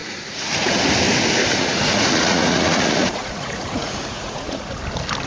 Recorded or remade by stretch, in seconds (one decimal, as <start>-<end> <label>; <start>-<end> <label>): 0.0-0.8 remade; 0.8-1.5 recorded; 1.5-4.7 remade; 4.7-5.3 recorded